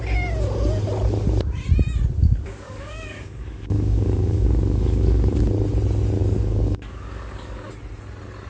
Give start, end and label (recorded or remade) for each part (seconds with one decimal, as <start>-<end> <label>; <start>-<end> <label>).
0.0-2.2 recorded; 2.2-5.4 remade; 5.4-6.2 recorded; 6.2-7.7 remade; 7.7-8.5 recorded